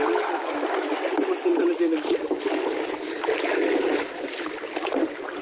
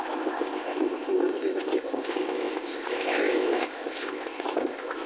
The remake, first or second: second